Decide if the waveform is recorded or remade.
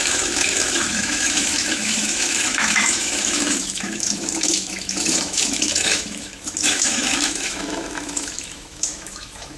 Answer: remade